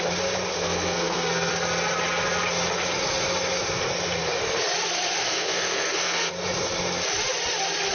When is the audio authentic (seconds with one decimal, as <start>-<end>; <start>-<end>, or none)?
0.0-0.5; 1.5-5.2; 6.3-7.9